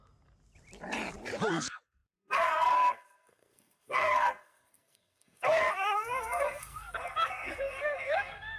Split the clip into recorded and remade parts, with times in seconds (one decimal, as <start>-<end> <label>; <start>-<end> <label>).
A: 0.0-1.5 recorded; 1.5-8.6 remade